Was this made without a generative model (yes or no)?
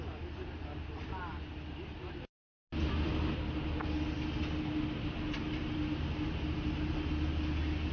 yes